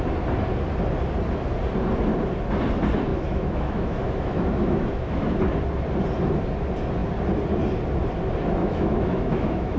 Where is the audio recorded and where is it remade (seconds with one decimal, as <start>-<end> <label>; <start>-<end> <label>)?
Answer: 0.0-3.1 recorded; 3.1-5.4 remade; 5.4-8.6 recorded; 8.6-9.8 remade